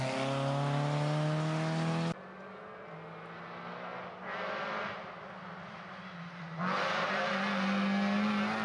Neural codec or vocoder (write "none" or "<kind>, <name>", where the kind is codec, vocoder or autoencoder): none